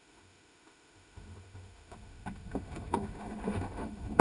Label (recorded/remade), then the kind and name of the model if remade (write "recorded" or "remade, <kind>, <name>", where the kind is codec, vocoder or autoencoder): remade, autoencoder, DAC-VAE